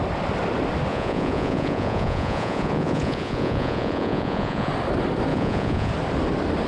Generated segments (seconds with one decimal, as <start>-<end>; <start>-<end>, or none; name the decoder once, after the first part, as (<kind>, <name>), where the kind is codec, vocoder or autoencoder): 0.9-4.7 (vocoder, Vocos); 5.3-5.9